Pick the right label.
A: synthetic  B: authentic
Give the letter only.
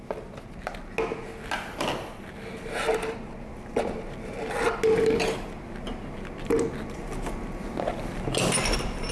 B